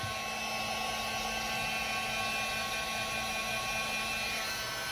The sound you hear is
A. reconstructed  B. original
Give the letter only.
B